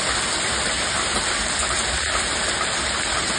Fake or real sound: real